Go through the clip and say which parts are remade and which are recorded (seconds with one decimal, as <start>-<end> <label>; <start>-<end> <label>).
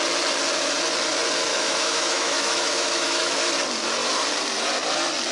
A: 0.0-1.5 recorded; 1.5-3.5 remade; 3.5-5.3 recorded